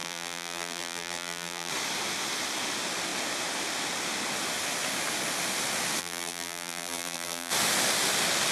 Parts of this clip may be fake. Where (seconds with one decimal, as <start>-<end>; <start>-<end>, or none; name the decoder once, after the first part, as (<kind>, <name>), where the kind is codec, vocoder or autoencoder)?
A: 0.0-1.7 (vocoder, BigVGAN v2); 6.0-7.5